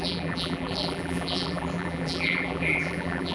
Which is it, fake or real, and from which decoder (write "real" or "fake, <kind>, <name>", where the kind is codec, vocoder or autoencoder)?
fake, vocoder, BigVGAN v2